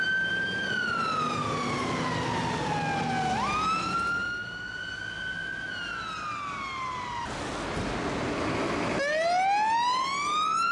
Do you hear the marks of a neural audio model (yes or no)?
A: no